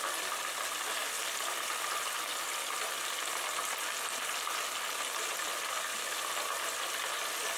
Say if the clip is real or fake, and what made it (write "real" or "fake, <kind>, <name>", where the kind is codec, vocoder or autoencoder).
real